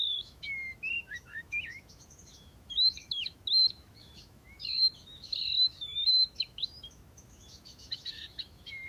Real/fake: fake